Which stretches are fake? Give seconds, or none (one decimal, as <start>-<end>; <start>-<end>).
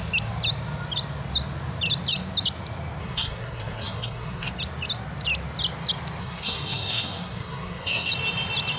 3.0-4.5; 6.2-8.1